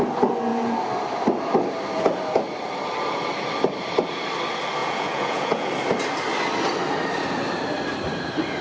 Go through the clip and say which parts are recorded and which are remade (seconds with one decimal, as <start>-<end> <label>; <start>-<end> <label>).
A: 0.0-4.8 recorded; 4.8-5.7 remade; 5.7-8.6 recorded